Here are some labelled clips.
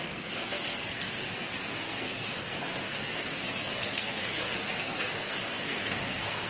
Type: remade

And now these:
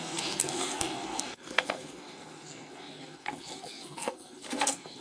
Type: remade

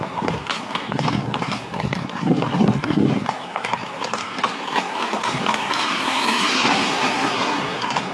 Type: remade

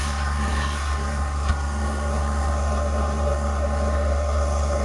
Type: remade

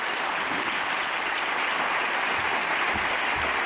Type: recorded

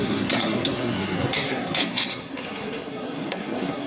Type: remade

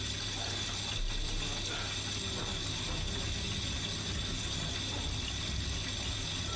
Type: recorded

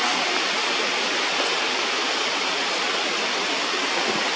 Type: recorded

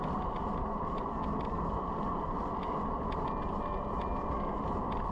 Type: recorded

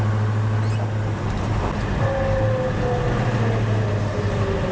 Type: recorded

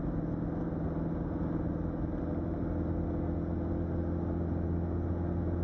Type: recorded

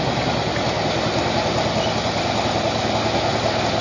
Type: recorded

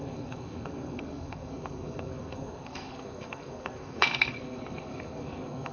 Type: remade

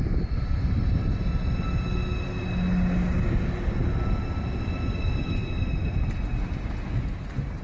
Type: recorded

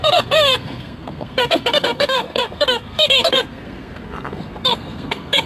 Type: remade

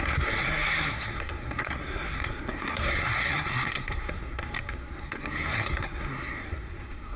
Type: remade